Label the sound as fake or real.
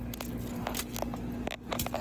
real